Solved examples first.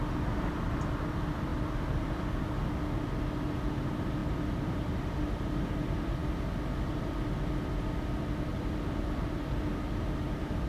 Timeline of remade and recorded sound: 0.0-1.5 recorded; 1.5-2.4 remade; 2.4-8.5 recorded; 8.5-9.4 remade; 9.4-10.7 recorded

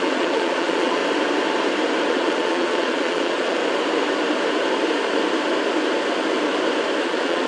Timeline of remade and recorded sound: 0.0-1.0 remade; 1.0-2.1 recorded; 2.1-3.6 remade; 3.6-7.0 recorded; 7.0-7.5 remade

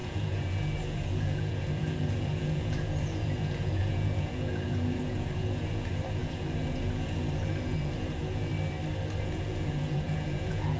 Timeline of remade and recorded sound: 0.0-8.5 remade; 8.5-9.2 recorded; 9.2-10.8 remade